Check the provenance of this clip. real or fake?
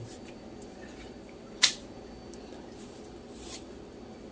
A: real